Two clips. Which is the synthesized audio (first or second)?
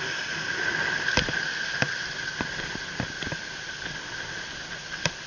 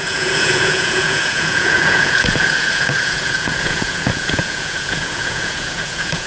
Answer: second